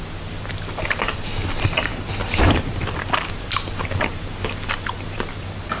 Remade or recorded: recorded